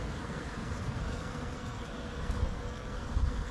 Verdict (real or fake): fake